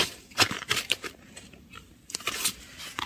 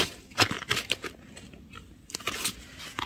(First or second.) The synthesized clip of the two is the first